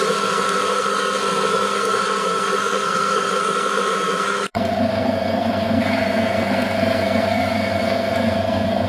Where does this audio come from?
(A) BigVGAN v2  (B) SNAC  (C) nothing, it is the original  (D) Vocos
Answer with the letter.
B